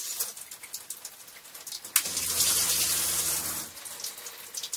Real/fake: real